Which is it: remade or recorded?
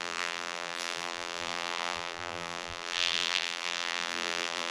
remade